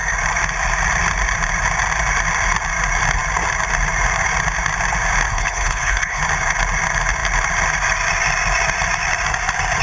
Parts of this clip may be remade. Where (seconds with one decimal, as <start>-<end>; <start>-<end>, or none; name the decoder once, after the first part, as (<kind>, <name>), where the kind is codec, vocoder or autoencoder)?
5.3-6.2 (codec, HILCodec)